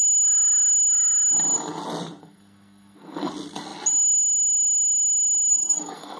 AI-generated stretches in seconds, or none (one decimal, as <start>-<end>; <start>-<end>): 2.2-3.3; 5.5-6.2